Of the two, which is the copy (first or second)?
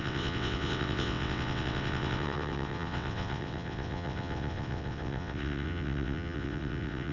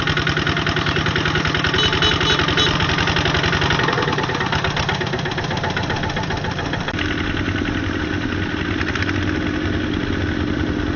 first